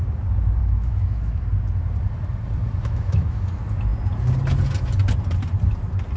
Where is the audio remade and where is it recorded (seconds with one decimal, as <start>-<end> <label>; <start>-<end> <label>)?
0.0-0.6 recorded; 0.6-1.4 remade; 1.4-2.8 recorded; 2.8-3.5 remade; 3.5-6.2 recorded